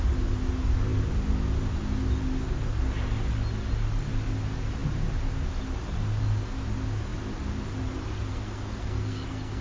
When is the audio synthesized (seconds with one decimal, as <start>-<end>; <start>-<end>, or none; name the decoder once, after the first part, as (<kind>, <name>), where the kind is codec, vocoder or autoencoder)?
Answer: 8.3-9.6 (codec, SNAC)